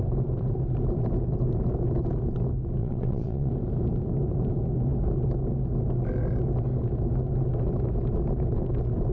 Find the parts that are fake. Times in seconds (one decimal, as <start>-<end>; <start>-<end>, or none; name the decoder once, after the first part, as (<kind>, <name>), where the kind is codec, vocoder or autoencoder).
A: 2.8-3.5 (vocoder, WaveNeXt)